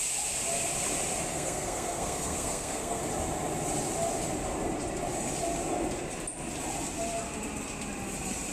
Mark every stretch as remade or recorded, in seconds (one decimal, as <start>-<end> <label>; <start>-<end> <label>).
0.0-1.3 recorded; 1.3-3.0 remade; 3.0-8.5 recorded